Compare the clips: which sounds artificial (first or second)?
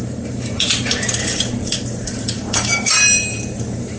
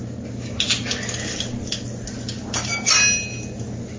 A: first